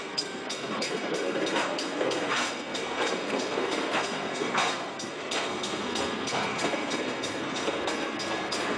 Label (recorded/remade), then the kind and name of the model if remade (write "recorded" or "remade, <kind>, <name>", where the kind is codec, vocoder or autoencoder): remade, codec, SNAC